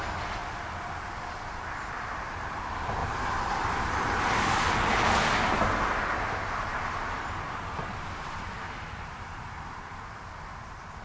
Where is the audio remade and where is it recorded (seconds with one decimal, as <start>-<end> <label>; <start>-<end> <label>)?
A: 0.0-3.0 recorded; 3.0-5.1 remade; 5.1-7.8 recorded; 7.8-10.2 remade; 10.2-11.0 recorded